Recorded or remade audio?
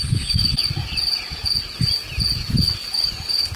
recorded